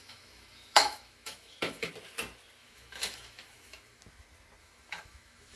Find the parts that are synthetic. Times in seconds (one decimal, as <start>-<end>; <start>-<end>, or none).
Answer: 0.0-1.9; 2.6-4.0; 4.6-5.6